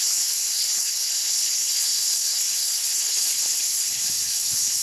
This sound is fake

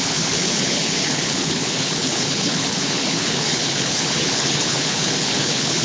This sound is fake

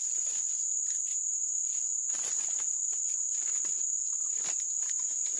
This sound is real